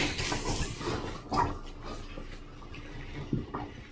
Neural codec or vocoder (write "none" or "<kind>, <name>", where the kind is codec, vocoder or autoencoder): none